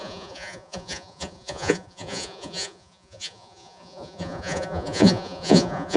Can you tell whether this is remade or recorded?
remade